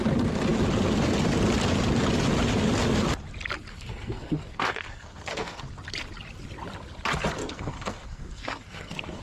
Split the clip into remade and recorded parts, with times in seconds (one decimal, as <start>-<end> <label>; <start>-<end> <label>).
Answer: 0.0-3.7 recorded; 3.7-5.6 remade; 5.6-7.4 recorded; 7.4-9.2 remade